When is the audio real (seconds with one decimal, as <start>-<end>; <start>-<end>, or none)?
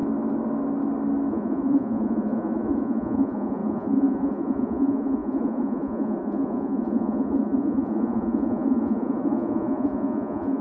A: 0.0-1.3